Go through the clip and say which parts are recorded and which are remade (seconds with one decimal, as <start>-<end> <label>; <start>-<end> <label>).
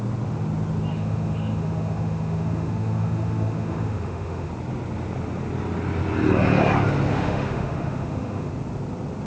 0.0-0.9 recorded; 0.9-4.5 remade; 4.5-7.1 recorded; 7.1-8.5 remade; 8.5-9.3 recorded